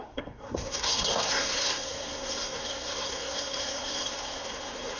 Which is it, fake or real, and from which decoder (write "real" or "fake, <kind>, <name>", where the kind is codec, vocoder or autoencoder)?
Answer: fake, codec, SNAC